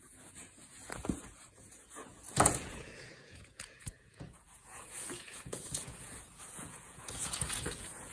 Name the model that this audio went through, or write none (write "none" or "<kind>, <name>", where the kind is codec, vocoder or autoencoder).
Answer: vocoder, Vocos